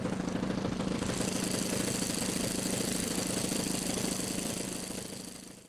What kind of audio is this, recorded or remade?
recorded